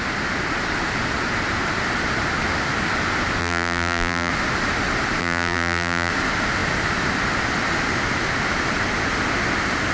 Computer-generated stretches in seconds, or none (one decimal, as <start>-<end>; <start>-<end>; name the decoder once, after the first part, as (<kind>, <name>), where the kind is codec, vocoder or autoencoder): 3.4-4.3 (vocoder, BigVGAN v2); 5.2-6.1